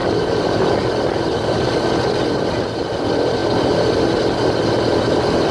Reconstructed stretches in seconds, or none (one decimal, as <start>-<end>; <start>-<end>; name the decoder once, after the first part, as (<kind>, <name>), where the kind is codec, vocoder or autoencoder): none